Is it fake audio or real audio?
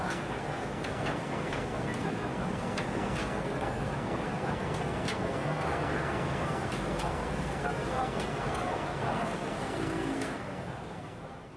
fake